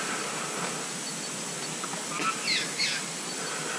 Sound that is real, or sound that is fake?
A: real